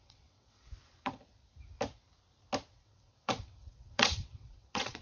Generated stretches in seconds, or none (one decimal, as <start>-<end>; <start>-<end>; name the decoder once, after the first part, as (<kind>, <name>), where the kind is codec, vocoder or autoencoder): 0.0-1.2 (vocoder, WaveNeXt); 2.7-5.0